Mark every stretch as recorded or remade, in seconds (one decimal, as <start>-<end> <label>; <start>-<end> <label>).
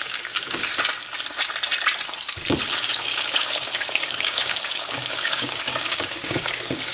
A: 0.0-0.7 remade; 0.7-2.6 recorded; 2.6-6.9 remade